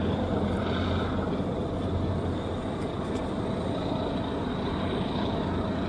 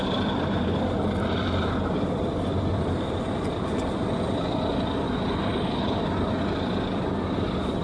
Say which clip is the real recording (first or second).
first